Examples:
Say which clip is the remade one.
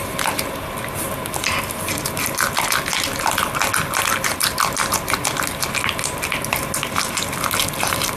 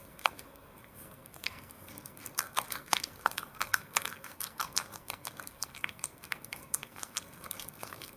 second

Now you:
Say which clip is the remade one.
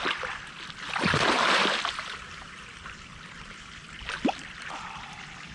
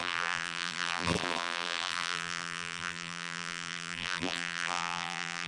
second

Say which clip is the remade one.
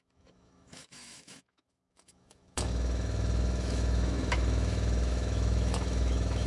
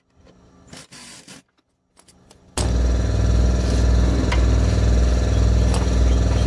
first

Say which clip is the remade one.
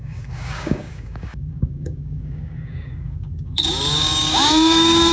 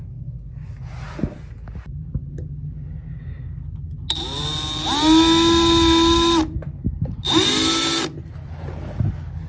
first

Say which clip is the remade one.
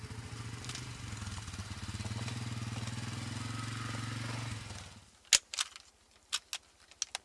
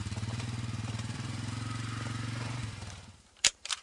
second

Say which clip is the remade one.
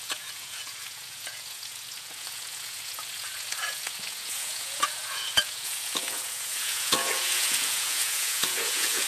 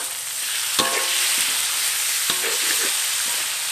first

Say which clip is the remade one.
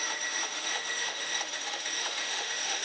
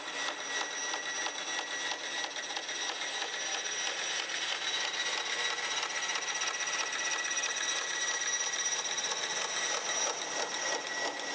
first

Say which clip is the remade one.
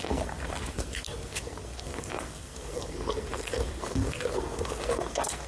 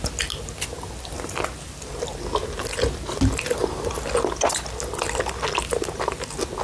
first